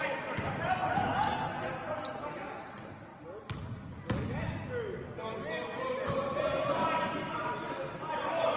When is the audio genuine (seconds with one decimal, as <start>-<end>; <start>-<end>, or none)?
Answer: 1.1-2.6; 3.1-5.9